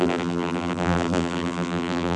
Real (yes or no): no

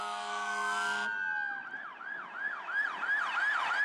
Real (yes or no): yes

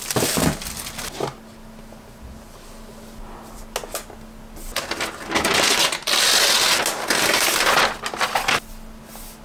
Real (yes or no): yes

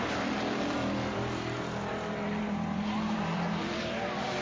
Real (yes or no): no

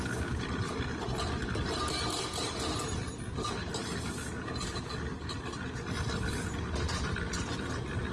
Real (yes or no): yes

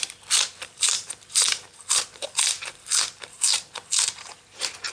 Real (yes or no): no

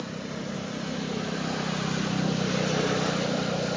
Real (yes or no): no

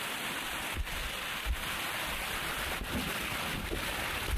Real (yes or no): yes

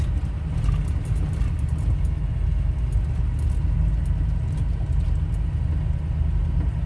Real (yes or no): yes